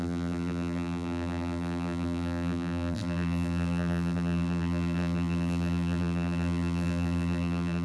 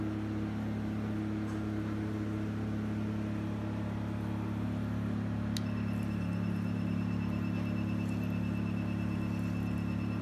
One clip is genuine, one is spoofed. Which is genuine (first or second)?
second